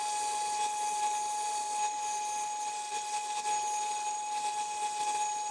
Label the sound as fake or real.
real